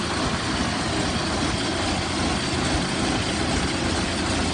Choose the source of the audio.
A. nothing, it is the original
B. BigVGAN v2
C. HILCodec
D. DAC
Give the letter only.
A